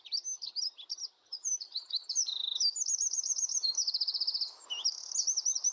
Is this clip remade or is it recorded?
recorded